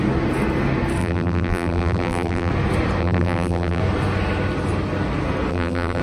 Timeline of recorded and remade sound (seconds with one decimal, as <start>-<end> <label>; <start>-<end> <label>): 0.0-1.0 recorded; 1.0-2.5 remade; 2.5-3.0 recorded; 3.0-3.8 remade; 3.8-5.5 recorded; 5.5-6.0 remade

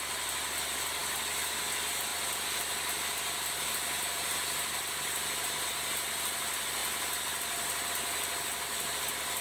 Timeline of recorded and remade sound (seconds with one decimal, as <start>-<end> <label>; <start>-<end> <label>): 0.0-9.4 recorded

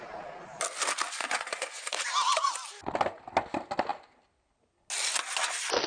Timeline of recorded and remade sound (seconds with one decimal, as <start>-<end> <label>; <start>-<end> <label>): 0.0-1.2 recorded; 1.2-1.9 remade; 1.9-5.9 recorded

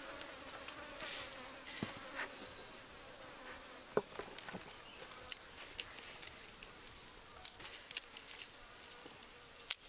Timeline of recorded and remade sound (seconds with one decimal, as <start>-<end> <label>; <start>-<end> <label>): 0.0-9.9 recorded

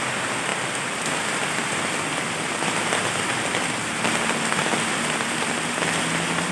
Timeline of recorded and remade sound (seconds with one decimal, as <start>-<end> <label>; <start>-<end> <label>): 0.0-6.5 recorded

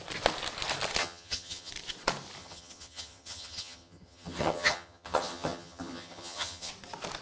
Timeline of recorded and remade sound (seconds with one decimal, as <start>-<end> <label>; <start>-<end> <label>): 0.0-1.0 recorded; 1.0-1.7 remade; 1.7-2.4 recorded; 2.4-6.7 remade; 6.7-7.2 recorded

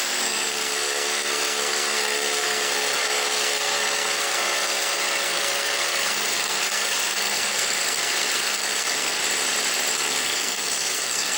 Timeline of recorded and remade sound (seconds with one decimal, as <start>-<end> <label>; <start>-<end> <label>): 0.0-9.2 remade; 9.2-9.9 recorded; 9.9-11.4 remade